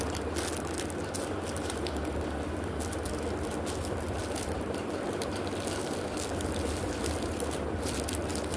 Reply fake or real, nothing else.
real